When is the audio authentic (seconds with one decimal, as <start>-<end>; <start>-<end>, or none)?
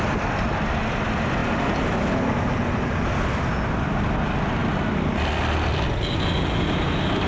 0.0-7.3